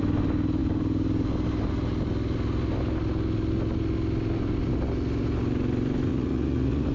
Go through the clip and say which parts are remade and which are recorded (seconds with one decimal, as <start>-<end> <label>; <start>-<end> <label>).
0.0-6.1 recorded; 6.1-6.9 remade